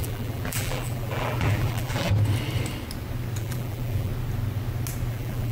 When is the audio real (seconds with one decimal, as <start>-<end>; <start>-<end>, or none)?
2.1-3.4; 4.1-5.1